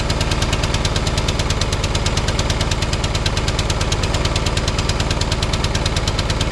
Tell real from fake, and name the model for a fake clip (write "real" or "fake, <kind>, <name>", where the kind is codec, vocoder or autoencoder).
real